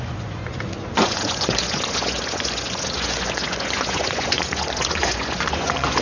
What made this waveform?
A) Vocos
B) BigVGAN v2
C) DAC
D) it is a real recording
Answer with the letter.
A